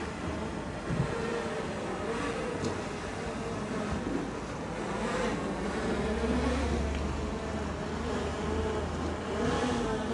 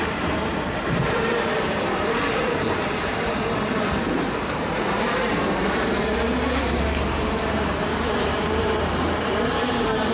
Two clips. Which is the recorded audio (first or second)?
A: first